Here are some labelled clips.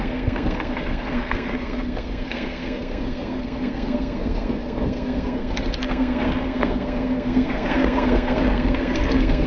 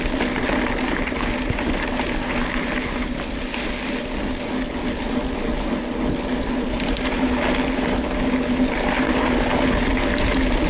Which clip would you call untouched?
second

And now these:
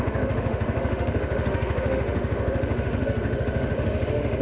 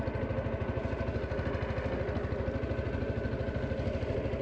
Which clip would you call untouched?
second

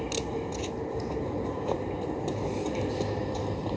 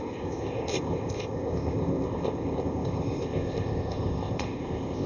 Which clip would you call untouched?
first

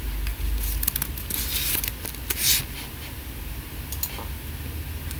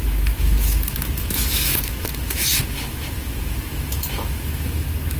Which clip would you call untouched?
first